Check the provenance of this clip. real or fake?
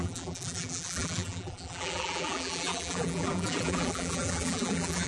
fake